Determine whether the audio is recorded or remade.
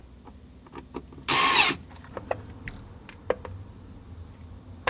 recorded